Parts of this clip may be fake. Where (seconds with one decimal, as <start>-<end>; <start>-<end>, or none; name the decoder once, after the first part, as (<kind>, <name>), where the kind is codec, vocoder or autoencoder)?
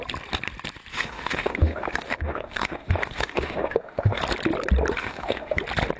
0.9-4.2 (autoencoder, DAC-VAE); 5.0-5.6